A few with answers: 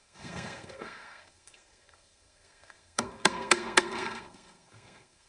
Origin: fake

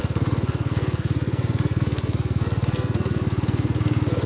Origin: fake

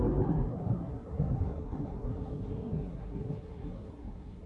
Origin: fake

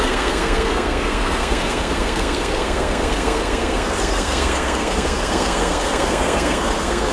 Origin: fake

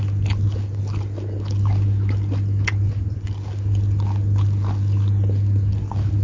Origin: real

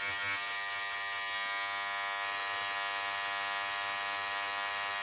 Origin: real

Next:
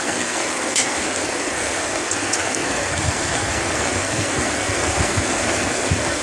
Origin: fake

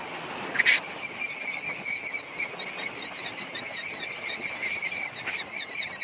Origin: real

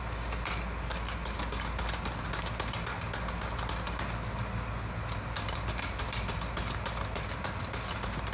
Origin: real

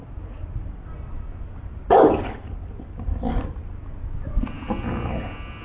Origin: real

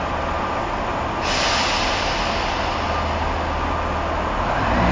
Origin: real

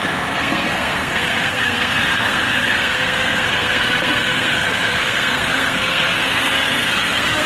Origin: fake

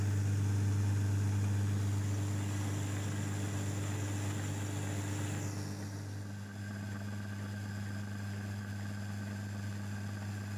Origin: real